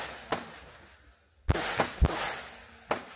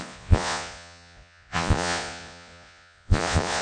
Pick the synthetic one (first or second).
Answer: second